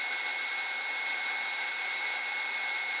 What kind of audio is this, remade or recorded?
recorded